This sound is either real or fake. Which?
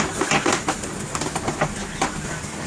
real